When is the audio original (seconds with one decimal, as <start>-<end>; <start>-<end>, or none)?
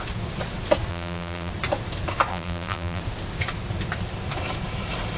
0.0-0.9; 1.5-2.3; 3.0-5.2